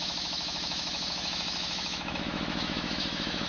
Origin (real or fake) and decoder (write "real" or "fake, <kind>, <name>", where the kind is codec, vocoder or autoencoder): fake, autoencoder, DAC-VAE